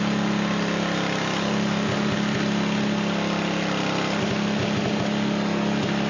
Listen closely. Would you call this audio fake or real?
real